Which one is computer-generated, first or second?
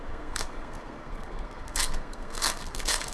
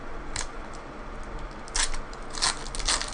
first